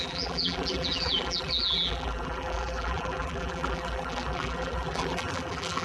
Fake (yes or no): yes